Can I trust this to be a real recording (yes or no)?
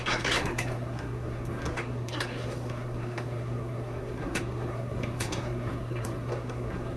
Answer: no